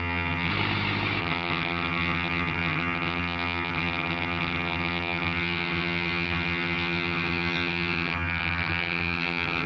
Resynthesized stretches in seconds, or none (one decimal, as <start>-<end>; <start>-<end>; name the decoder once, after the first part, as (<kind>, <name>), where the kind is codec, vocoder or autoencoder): 0.0-0.5 (vocoder, HiFi-GAN); 1.2-9.7